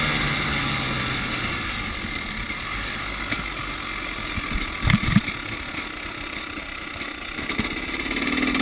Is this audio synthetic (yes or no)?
no